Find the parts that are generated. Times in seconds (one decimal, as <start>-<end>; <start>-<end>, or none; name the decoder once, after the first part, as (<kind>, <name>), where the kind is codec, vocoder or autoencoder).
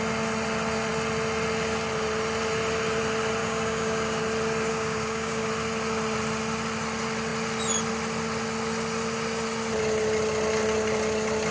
3.4-4.2 (codec, DAC); 4.7-5.5